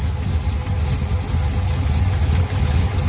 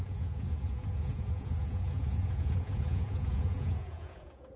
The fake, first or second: second